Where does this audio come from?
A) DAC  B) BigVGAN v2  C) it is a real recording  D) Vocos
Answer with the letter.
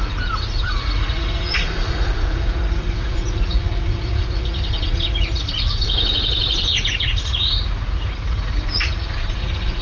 D